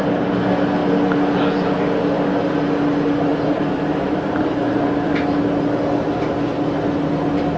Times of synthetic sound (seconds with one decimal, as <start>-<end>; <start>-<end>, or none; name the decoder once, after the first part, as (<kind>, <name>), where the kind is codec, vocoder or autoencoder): none